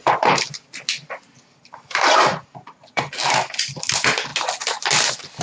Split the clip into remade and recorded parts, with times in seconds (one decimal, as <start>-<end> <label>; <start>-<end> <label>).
0.0-2.3 recorded; 2.3-3.0 remade; 3.0-5.4 recorded

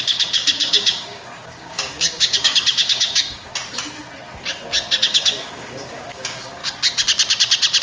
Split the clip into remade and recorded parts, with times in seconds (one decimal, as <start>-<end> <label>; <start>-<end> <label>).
0.0-3.5 remade; 3.5-5.0 recorded; 5.0-6.6 remade; 6.6-7.8 recorded

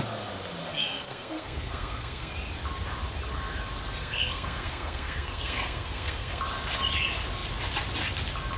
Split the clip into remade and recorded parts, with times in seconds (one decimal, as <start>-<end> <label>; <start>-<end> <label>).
0.0-0.6 recorded; 0.6-2.3 remade; 2.3-4.0 recorded; 4.0-6.4 remade; 6.4-8.6 recorded